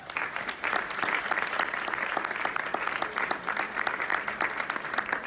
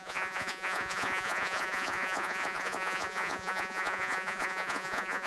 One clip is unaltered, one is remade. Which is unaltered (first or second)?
first